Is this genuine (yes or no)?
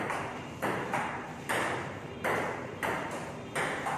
no